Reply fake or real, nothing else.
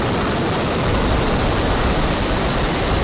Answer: real